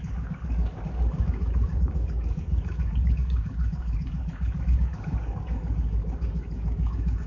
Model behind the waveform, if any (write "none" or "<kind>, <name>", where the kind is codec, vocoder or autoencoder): codec, DAC